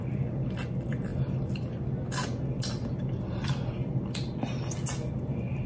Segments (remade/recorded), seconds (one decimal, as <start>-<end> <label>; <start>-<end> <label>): 0.0-5.7 recorded